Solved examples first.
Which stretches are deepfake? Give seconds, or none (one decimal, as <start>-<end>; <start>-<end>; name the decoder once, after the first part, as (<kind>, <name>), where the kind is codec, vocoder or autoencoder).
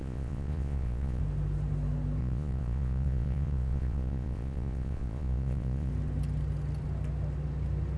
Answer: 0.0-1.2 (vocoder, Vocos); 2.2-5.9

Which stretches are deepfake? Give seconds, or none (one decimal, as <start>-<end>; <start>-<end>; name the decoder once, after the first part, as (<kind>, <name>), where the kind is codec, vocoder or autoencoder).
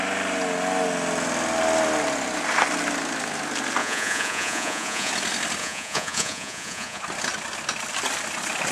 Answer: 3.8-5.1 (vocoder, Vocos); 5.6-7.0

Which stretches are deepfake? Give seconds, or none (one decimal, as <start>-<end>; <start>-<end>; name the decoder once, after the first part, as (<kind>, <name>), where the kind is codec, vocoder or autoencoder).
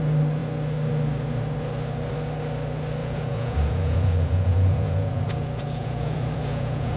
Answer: 3.0-7.0 (vocoder, Vocos)